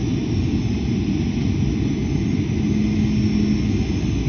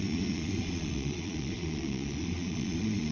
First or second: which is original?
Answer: first